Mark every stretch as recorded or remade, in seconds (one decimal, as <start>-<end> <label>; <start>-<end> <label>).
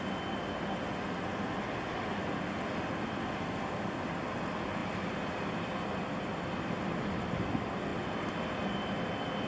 0.0-9.5 recorded